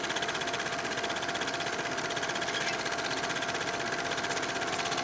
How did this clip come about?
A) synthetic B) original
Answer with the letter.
B